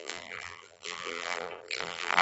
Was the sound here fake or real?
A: fake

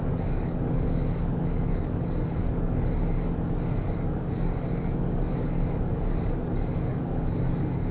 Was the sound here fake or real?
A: fake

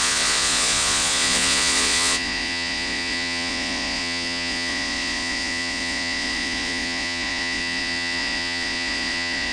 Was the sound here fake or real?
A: fake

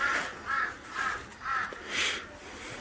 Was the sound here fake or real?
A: real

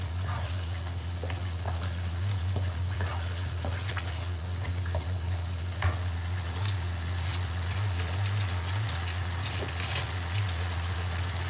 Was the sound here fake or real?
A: fake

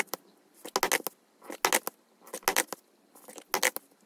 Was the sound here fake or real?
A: real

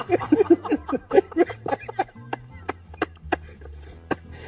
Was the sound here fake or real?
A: real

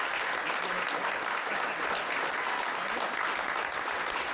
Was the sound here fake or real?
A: real